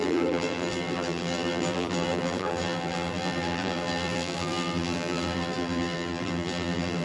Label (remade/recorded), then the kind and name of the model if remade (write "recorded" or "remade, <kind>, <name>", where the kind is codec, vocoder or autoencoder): remade, vocoder, BigVGAN v2